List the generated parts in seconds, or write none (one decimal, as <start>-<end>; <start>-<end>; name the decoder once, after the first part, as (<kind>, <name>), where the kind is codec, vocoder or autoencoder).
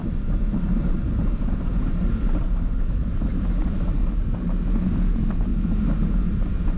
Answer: 0.0-4.0 (vocoder, BigVGAN v2); 5.5-6.8